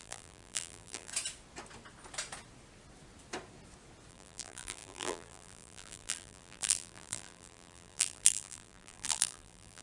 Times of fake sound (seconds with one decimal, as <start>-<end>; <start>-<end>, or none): 0.0-1.1; 4.1-9.8